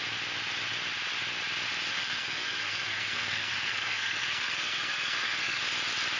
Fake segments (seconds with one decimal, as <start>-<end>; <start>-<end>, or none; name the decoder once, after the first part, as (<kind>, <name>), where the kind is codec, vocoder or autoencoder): 1.9-5.6 (codec, SNAC)